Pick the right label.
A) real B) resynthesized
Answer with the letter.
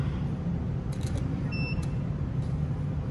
B